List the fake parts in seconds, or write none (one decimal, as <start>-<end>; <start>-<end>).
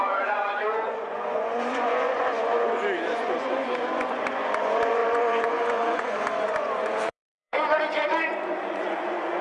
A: 0.0-9.4